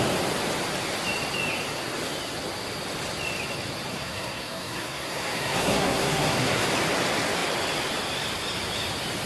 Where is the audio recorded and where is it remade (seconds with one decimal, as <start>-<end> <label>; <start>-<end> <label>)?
0.0-3.9 recorded; 3.9-6.7 remade; 6.7-9.3 recorded